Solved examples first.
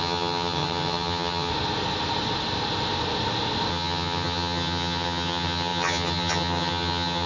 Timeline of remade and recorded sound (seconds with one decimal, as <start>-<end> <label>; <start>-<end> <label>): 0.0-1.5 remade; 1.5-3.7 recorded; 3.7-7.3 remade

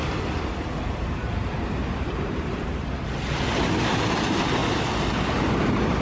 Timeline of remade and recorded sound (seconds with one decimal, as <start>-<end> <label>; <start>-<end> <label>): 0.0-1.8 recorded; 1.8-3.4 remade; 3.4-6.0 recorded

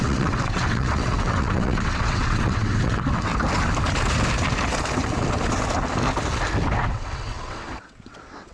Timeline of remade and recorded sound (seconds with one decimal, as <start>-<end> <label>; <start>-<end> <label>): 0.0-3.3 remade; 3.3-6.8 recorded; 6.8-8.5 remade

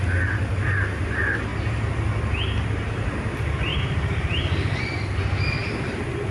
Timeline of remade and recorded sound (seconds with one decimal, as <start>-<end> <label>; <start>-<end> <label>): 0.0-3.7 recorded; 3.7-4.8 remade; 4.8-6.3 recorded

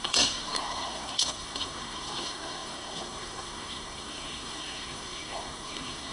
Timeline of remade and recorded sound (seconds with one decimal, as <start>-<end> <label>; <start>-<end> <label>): 0.0-6.1 remade

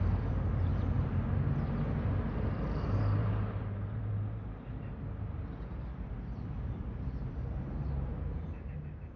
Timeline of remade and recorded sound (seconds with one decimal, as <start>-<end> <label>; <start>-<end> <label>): 0.0-0.7 recorded; 0.7-1.3 remade; 1.3-3.2 recorded; 3.2-4.5 remade; 4.5-5.9 recorded; 5.9-9.2 remade